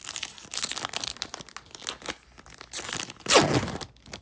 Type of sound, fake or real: real